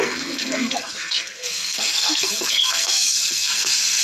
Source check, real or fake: fake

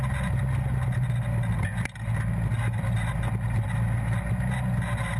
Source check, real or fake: real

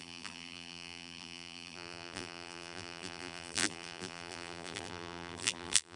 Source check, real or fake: fake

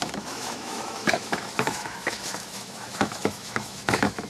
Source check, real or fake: fake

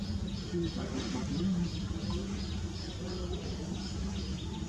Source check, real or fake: real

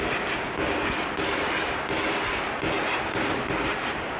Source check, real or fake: real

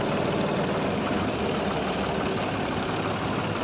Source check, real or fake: real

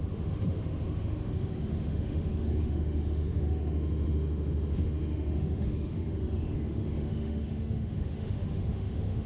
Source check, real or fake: fake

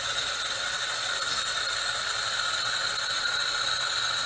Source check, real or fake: real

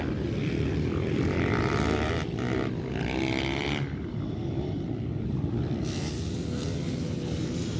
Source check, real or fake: real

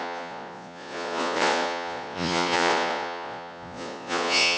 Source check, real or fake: fake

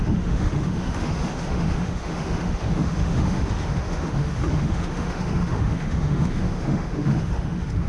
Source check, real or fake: fake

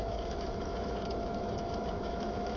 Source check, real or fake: fake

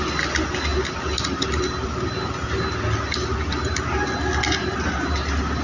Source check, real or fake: real